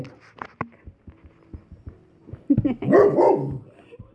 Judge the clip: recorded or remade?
recorded